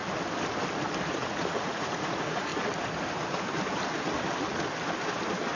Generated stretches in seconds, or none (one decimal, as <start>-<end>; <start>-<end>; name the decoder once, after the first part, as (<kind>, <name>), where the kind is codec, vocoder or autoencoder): 1.1-2.5 (vocoder, Vocos)